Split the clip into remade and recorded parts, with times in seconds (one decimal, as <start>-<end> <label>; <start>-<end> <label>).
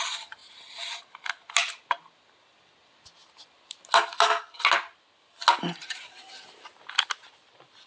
0.0-7.9 recorded